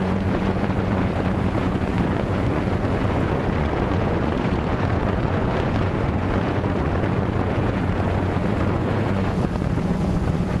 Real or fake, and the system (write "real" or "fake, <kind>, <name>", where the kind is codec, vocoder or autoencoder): fake, vocoder, Vocos